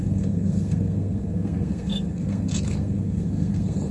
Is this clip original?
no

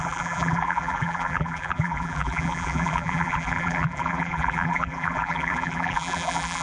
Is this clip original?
no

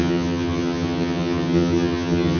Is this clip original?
no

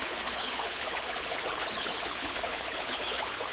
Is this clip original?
no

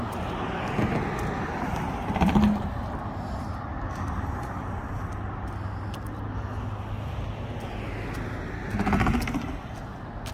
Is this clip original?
yes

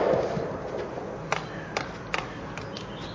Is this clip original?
yes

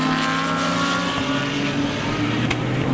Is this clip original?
yes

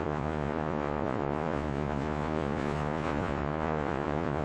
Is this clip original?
no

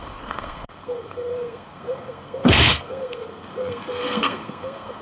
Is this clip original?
no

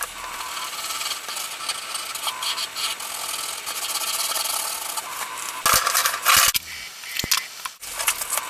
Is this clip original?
yes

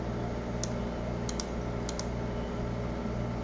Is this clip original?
yes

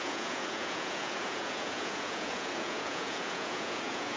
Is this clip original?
no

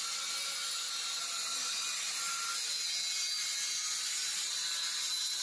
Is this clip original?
yes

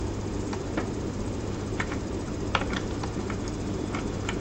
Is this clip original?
no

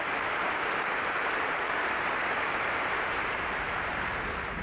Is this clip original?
no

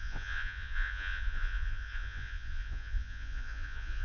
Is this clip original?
no